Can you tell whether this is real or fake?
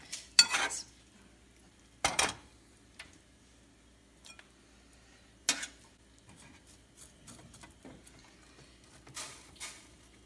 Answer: real